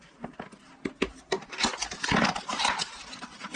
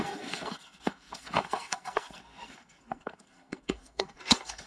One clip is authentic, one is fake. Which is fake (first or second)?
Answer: second